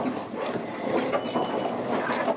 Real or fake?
real